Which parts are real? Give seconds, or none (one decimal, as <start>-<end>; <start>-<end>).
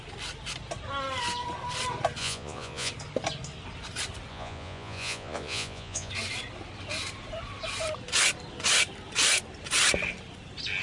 0.0-2.2; 2.9-4.3; 6.1-10.8